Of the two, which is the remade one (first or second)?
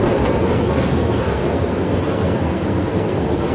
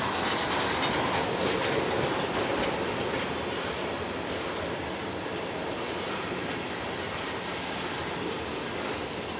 first